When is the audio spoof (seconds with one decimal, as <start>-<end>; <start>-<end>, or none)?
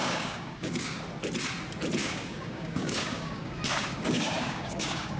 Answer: 0.0-1.0; 2.0-5.2